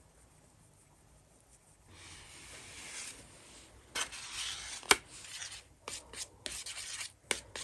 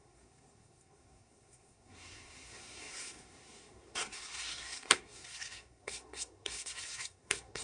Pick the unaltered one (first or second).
first